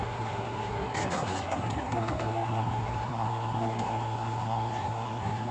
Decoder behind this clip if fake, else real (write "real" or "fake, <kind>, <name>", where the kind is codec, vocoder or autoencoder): fake, codec, SNAC